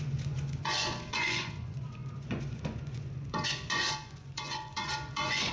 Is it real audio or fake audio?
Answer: fake